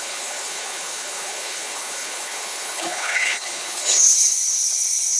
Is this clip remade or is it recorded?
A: remade